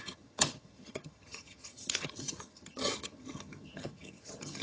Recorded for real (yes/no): no